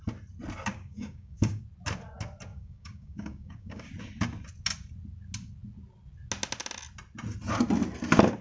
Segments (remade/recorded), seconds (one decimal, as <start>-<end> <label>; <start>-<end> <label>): 0.0-0.7 recorded; 0.7-1.6 remade; 1.6-2.5 recorded; 2.5-3.9 remade; 3.9-8.4 recorded